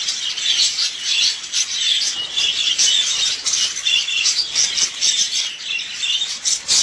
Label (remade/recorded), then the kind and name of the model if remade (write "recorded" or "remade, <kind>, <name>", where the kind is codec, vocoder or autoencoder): recorded